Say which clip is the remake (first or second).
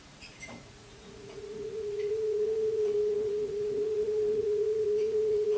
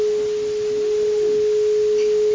first